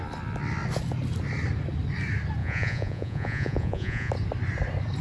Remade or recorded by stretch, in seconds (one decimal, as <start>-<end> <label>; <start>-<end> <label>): 0.0-2.4 recorded; 2.4-4.1 remade; 4.1-5.0 recorded